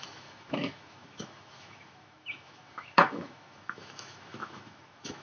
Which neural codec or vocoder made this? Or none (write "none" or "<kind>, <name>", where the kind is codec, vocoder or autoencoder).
autoencoder, DAC-VAE